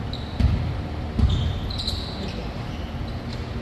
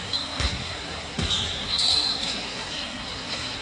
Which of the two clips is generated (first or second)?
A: second